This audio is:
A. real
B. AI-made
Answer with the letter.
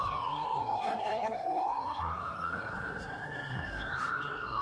B